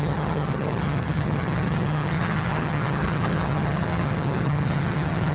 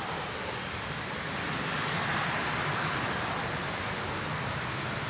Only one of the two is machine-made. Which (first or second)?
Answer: first